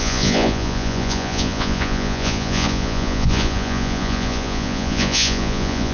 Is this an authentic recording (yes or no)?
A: no